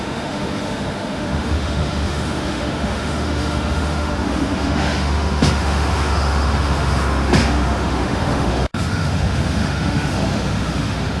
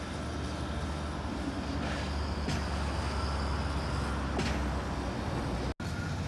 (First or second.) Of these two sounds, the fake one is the first